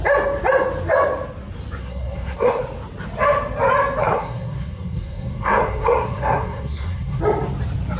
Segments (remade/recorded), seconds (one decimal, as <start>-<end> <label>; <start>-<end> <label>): 0.0-1.8 recorded; 1.8-2.6 remade; 2.6-4.0 recorded; 4.0-7.2 remade; 7.2-8.0 recorded